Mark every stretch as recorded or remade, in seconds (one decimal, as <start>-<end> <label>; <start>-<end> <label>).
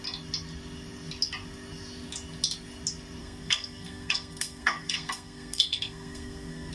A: 0.0-3.2 recorded; 3.2-6.7 remade